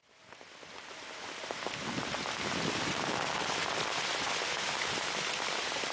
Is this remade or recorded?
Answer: recorded